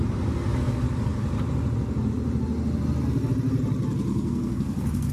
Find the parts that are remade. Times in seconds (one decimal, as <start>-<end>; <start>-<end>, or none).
4.1-5.1